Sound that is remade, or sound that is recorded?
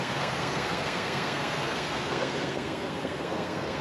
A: remade